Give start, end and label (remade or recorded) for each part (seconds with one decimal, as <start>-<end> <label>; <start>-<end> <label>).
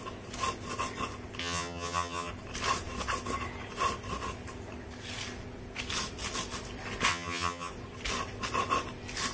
0.0-1.4 recorded; 1.4-2.3 remade; 2.3-7.1 recorded; 7.1-7.7 remade; 7.7-9.3 recorded